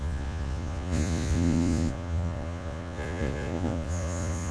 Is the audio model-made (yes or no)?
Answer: yes